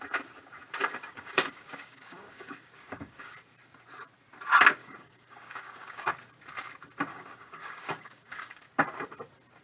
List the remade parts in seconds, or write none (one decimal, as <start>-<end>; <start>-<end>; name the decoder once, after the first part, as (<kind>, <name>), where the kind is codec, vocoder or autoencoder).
0.8-3.3 (codec, DAC); 4.8-6.1; 7.1-8.6